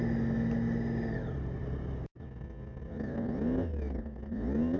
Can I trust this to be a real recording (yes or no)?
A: yes